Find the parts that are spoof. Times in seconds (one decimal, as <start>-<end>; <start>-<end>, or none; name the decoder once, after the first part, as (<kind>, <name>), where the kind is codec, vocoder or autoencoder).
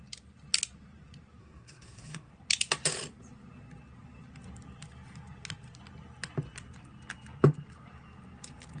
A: 1.4-2.3 (codec, SNAC)